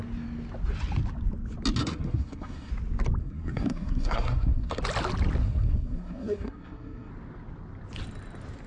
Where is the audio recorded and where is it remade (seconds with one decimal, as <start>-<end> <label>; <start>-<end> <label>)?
0.0-1.8 recorded; 1.8-2.7 remade; 2.7-3.2 recorded; 3.2-4.8 remade; 4.8-5.4 recorded; 5.4-7.1 remade; 7.1-8.7 recorded